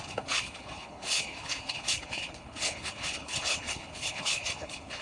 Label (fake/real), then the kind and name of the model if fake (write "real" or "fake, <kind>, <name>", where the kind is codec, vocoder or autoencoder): fake, codec, HILCodec